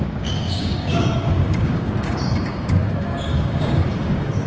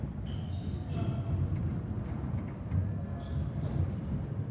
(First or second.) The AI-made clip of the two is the first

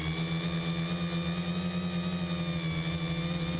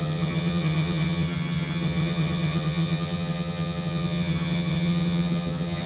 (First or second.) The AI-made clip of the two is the second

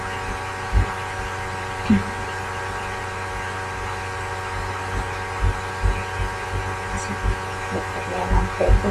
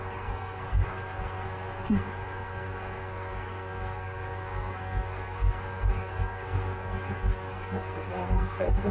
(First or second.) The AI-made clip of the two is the second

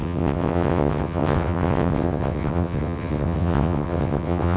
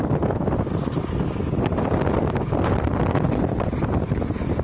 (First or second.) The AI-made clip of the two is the first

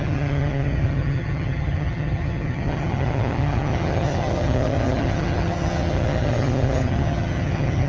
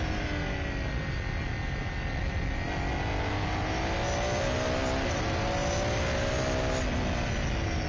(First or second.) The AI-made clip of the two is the first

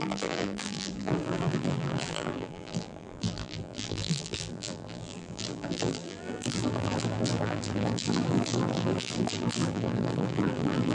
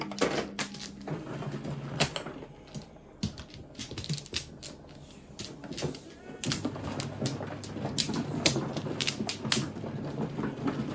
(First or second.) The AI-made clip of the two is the first